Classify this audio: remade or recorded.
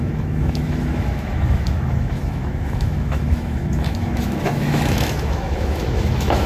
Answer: remade